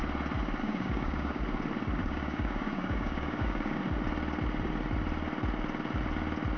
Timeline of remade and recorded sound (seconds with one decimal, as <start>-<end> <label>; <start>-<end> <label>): 0.0-0.6 recorded; 0.6-1.4 remade; 1.4-2.0 recorded; 2.0-3.8 remade; 3.8-6.6 recorded